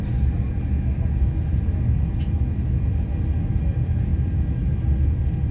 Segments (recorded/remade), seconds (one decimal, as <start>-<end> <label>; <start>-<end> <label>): 0.0-5.5 recorded